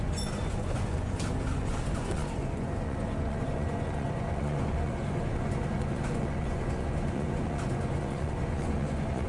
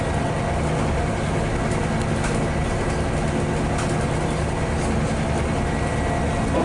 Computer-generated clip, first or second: first